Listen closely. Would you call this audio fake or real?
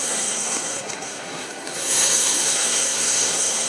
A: fake